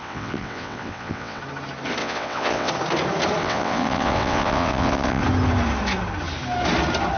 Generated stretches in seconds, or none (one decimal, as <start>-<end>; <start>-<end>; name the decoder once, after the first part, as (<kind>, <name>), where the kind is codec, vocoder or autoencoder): 0.0-1.4 (vocoder, WaveNeXt); 2.0-2.7; 3.4-5.2